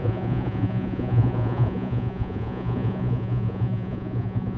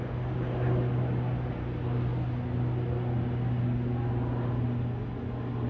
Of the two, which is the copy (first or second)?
first